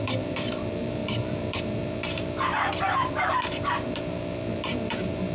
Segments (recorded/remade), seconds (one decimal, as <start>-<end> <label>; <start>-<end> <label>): 0.0-5.3 remade